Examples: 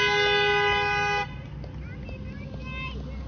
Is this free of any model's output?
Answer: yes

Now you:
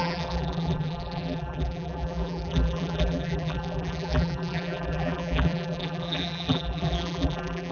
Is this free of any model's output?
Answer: no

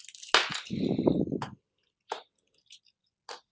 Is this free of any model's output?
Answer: yes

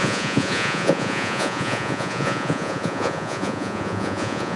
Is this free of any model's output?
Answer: no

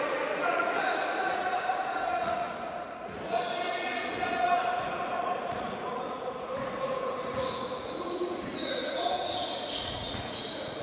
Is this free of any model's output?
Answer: no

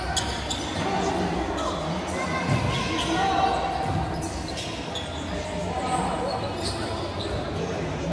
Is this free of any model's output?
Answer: yes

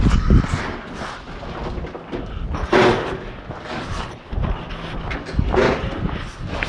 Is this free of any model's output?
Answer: yes